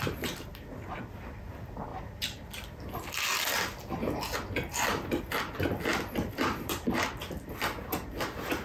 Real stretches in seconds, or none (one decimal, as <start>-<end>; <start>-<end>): 0.0-5.9; 7.1-8.6